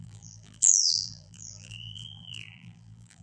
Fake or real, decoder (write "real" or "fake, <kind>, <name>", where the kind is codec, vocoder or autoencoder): fake, vocoder, BigVGAN v2